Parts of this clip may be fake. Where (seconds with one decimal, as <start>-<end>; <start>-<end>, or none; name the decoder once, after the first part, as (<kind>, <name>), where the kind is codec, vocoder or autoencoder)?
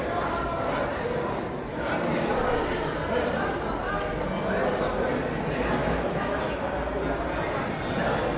5.8-6.4 (autoencoder, DAC-VAE)